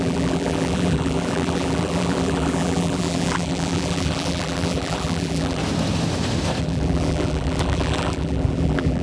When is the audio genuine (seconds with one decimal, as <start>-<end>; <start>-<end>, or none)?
5.6-6.6